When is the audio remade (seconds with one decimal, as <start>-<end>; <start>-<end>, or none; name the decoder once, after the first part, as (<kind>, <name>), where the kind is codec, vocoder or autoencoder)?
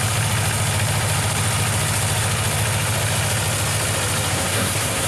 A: 4.3-5.1 (codec, SNAC)